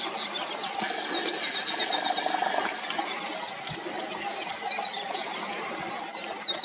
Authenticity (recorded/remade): recorded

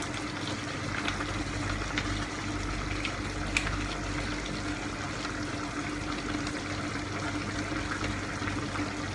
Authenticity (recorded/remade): recorded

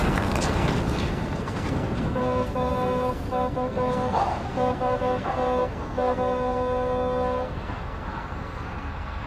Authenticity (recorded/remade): remade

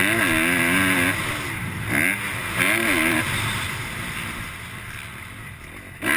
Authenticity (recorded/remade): recorded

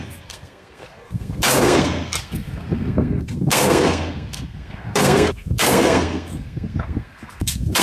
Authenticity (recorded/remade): remade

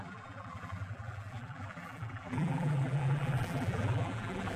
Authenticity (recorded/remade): remade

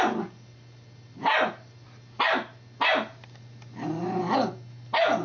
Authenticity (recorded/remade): recorded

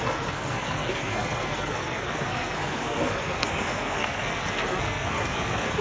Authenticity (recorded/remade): remade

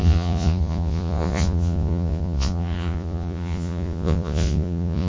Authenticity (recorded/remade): remade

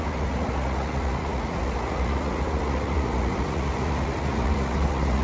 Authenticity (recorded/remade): remade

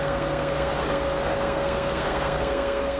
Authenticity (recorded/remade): remade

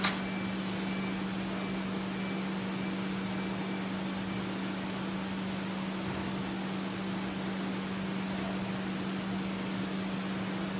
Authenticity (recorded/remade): recorded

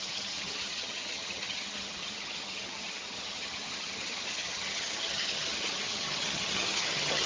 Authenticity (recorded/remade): remade